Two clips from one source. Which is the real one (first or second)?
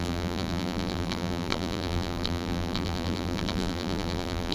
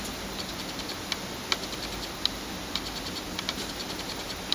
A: second